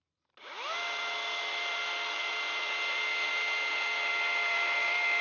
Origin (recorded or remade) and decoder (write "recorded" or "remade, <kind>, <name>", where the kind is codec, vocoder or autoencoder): recorded